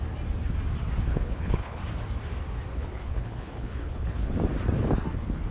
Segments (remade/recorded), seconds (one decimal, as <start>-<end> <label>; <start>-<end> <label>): 0.0-1.1 recorded; 1.1-1.8 remade; 1.8-2.7 recorded; 2.7-4.3 remade; 4.3-5.5 recorded